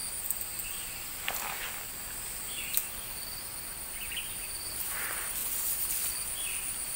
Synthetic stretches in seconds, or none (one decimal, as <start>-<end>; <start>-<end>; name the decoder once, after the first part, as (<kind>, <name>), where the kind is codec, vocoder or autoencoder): 4.2-5.4 (vocoder, BigVGAN v2)

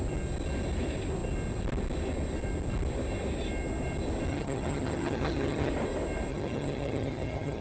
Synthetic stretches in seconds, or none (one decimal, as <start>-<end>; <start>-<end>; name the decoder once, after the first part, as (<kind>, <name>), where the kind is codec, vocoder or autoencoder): 4.3-5.7 (vocoder, HiFi-GAN); 6.3-7.6

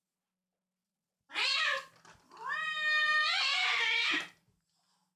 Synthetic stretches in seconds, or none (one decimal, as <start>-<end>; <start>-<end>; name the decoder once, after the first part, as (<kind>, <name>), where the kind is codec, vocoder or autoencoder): none

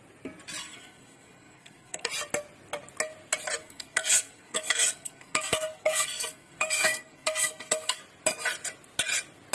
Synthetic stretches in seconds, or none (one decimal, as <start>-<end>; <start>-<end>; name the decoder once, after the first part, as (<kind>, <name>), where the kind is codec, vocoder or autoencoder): 0.6-2.1 (codec, SNAC); 3.6-8.0

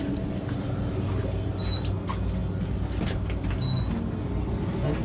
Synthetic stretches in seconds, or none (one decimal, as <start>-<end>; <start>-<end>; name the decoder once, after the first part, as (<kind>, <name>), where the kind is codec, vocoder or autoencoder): none